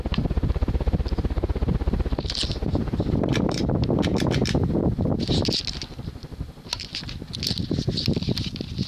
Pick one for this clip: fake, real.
real